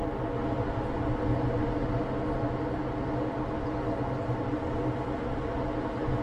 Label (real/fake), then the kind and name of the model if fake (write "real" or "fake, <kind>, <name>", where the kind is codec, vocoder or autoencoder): real